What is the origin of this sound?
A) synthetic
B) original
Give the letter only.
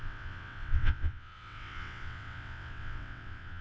A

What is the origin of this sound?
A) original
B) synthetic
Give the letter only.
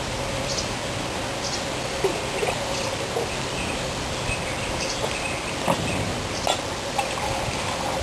A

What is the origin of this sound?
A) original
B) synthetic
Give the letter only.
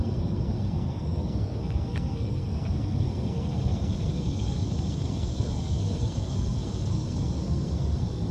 B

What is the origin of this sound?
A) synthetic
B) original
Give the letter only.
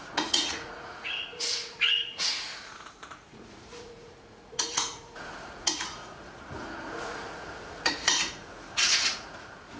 A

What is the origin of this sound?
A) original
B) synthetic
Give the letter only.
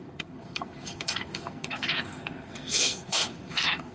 B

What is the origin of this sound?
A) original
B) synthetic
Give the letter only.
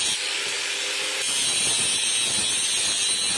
A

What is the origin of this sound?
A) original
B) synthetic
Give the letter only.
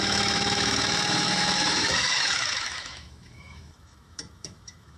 B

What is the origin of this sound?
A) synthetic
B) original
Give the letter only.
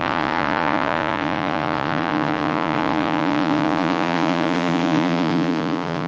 A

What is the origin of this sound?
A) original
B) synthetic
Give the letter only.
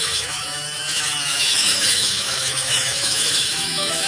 B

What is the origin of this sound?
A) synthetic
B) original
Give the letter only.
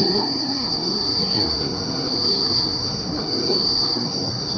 A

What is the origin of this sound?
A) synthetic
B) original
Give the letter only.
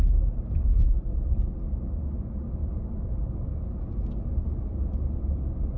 B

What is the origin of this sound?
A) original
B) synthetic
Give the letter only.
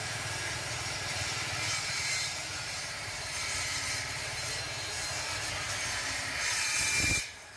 B